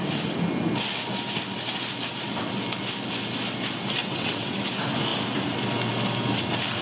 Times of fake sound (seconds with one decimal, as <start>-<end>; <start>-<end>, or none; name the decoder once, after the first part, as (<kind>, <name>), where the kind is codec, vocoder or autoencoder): 4.0-4.6 (vocoder, WaveNeXt)